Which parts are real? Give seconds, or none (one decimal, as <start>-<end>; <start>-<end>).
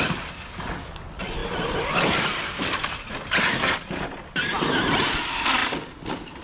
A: 0.0-6.4